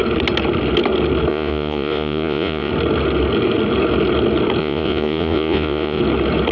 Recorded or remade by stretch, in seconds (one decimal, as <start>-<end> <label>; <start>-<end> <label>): 0.0-1.3 recorded; 1.3-2.7 remade; 2.7-4.6 recorded; 4.6-6.0 remade; 6.0-6.5 recorded